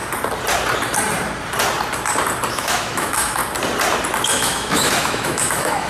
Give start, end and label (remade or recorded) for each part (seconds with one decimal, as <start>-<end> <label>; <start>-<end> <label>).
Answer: 0.0-2.5 recorded; 2.5-3.4 remade; 3.4-4.2 recorded; 4.2-5.9 remade